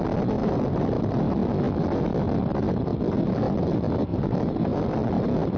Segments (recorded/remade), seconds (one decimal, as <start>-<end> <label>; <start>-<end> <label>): 0.0-0.4 recorded; 0.4-1.0 remade; 1.0-4.1 recorded; 4.1-4.9 remade; 4.9-5.6 recorded